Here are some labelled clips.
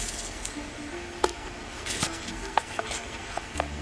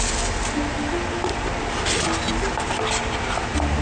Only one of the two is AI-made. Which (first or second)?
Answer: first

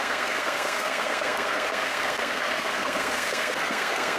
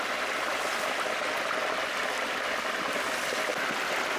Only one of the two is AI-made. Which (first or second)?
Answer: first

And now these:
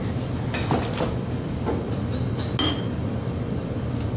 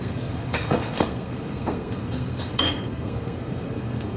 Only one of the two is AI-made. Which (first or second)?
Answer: second